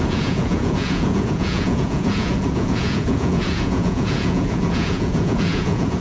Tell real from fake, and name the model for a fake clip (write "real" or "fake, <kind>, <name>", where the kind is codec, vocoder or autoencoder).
fake, vocoder, Vocos